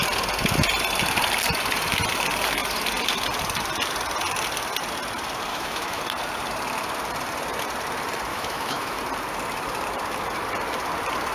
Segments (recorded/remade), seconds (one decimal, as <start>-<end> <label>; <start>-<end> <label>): 0.0-5.5 recorded; 5.5-6.0 remade; 6.0-8.3 recorded; 8.3-9.0 remade; 9.0-11.3 recorded